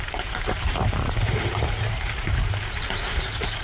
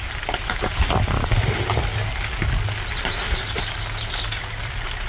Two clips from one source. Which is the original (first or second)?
second